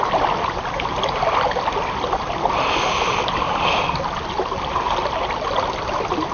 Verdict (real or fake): real